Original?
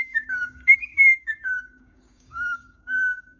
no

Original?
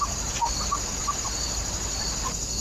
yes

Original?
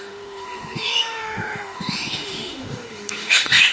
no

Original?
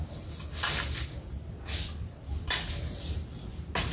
yes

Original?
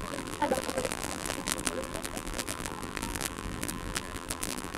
no